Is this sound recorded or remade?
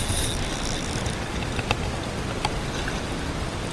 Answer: recorded